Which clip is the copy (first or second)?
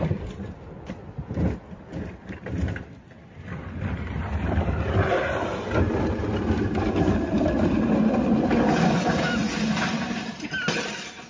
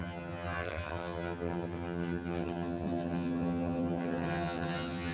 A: second